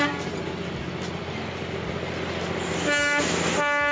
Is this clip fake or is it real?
real